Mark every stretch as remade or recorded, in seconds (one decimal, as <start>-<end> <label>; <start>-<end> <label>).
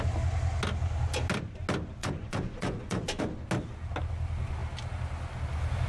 0.0-2.0 recorded; 2.0-3.2 remade; 3.2-5.9 recorded